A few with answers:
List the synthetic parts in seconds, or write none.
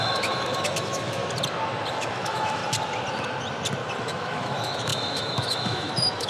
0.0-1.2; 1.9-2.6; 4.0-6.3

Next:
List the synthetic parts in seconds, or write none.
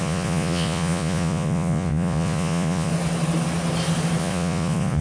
0.0-2.9; 4.2-5.0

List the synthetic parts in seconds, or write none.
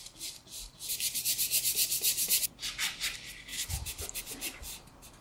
none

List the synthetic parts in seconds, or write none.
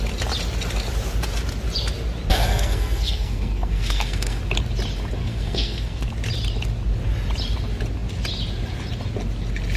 2.3-4.4; 5.2-6.1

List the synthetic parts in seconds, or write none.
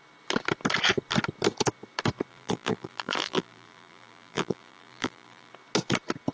2.3-5.5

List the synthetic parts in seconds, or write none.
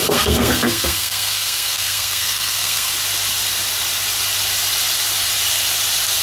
0.0-2.9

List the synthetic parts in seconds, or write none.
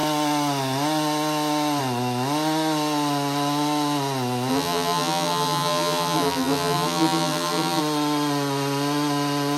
4.5-7.8